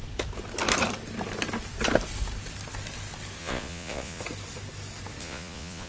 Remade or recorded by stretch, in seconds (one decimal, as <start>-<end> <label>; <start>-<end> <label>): 0.0-3.4 recorded; 3.4-4.2 remade; 4.2-5.2 recorded; 5.2-5.9 remade